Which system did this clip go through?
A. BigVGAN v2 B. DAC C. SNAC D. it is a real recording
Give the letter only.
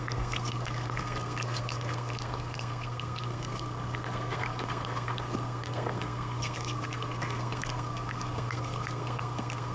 C